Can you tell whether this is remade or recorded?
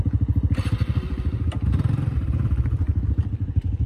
remade